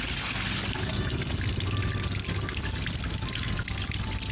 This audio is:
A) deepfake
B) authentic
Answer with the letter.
B